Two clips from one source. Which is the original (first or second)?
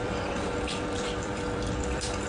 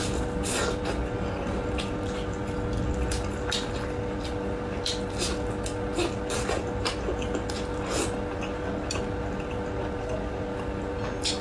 second